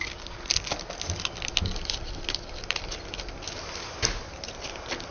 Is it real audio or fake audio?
real